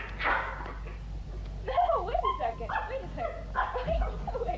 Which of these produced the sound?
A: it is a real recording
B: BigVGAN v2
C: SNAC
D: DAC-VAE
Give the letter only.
A